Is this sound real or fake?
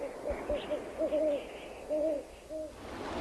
real